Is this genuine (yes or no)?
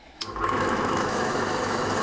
no